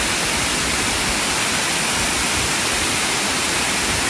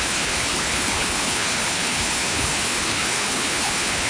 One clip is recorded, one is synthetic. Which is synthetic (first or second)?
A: second